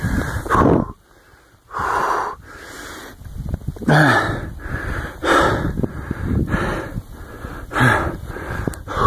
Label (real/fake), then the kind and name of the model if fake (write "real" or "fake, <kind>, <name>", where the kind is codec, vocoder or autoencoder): real